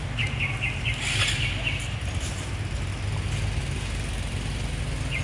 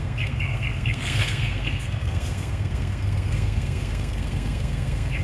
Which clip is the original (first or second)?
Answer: first